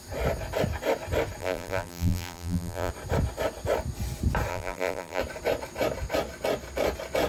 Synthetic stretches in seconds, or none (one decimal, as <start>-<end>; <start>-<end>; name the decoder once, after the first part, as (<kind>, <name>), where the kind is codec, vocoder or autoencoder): 1.4-2.9 (vocoder, BigVGAN v2); 4.5-5.2